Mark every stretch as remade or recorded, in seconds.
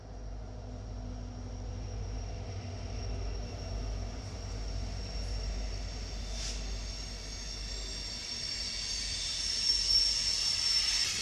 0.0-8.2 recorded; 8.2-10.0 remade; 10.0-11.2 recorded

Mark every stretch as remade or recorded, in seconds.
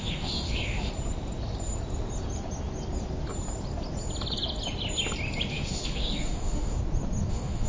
0.0-0.9 remade; 0.9-5.5 recorded; 5.5-6.8 remade; 6.8-7.3 recorded; 7.3-7.7 remade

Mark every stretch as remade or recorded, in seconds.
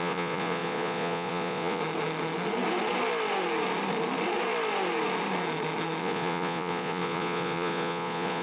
0.0-1.8 remade; 1.8-6.0 recorded; 6.0-8.4 remade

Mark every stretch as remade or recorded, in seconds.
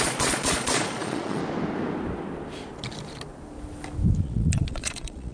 0.0-1.4 remade; 1.4-4.2 recorded; 4.2-5.3 remade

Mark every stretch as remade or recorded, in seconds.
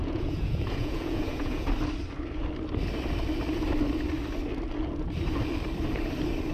0.0-1.7 remade; 1.7-6.5 recorded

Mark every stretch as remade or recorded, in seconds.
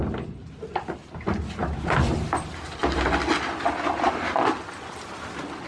0.0-5.7 recorded